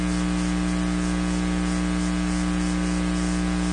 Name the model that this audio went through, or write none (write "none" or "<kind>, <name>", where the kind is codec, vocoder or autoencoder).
none